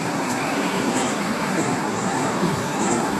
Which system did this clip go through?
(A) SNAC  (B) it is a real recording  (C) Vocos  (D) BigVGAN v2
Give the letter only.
A